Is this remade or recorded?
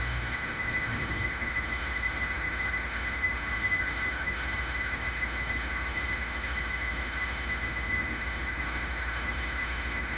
remade